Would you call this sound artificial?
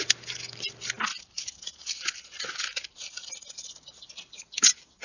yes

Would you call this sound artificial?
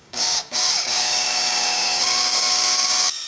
yes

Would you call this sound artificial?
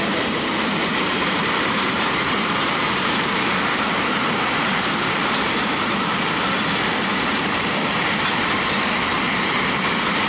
yes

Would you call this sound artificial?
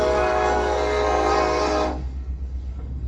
yes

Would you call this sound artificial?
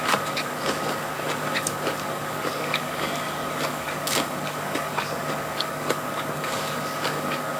yes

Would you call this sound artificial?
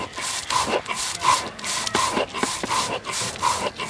no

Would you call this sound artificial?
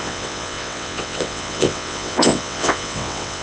yes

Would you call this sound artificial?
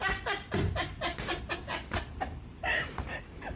no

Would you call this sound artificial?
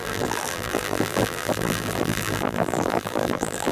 yes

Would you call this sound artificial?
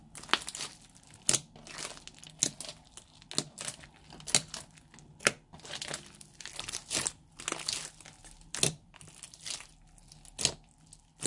no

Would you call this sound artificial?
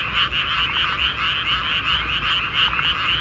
no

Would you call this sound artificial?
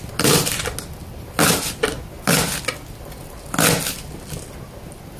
no